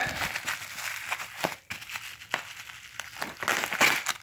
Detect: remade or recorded recorded